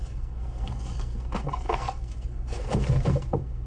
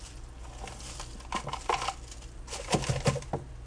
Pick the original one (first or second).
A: second